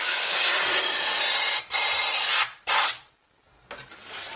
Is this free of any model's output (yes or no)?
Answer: yes